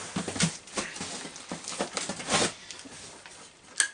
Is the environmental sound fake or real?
real